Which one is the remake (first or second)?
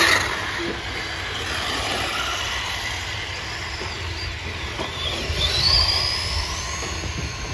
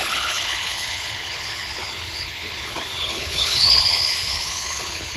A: second